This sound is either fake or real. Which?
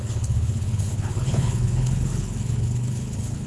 fake